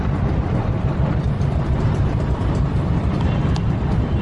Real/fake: real